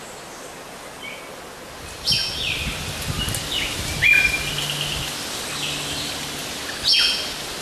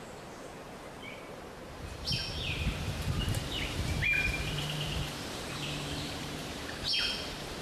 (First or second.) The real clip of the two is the first